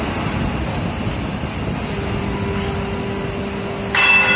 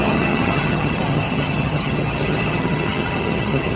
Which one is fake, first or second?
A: second